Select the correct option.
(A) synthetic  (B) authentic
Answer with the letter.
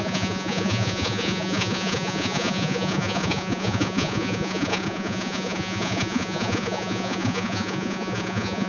A